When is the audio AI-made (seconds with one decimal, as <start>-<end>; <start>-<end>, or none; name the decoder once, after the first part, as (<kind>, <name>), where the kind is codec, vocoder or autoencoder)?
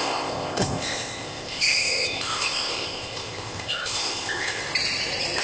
0.0-4.6 (codec, ZipCodec)